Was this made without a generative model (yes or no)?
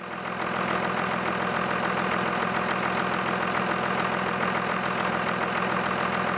yes